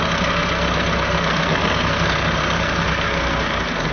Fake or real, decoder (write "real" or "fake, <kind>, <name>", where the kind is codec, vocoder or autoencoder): fake, codec, SNAC